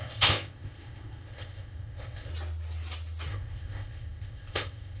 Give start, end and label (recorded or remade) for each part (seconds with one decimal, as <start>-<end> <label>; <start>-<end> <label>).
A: 0.0-2.3 remade; 2.3-3.3 recorded; 3.3-5.0 remade